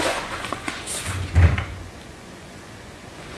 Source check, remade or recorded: remade